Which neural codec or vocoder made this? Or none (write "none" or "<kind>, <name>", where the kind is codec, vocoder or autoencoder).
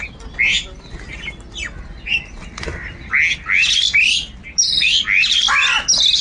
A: none